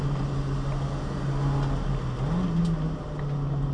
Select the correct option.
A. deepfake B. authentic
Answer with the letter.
B